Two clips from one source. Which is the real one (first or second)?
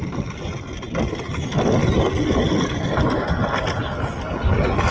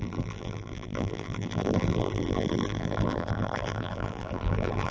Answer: first